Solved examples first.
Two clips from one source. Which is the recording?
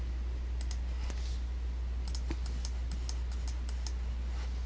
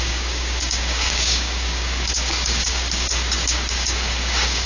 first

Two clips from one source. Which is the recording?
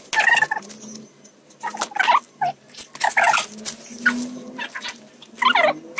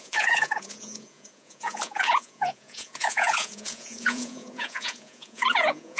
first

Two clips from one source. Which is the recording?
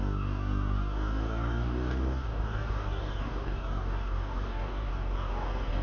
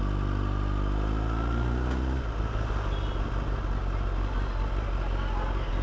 second